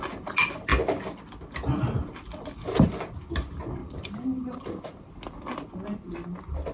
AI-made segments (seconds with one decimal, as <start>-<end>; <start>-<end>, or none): 3.8-5.1